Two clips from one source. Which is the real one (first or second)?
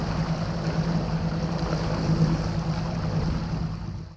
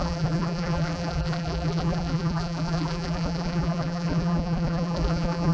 first